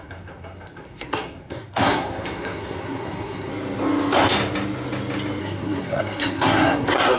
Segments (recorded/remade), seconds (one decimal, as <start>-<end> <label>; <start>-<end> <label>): 0.0-3.5 remade; 3.5-5.4 recorded; 5.4-7.2 remade